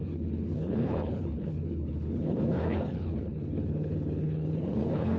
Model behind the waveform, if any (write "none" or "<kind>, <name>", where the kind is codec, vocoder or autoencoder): codec, HILCodec